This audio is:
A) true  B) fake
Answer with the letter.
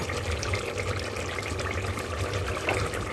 A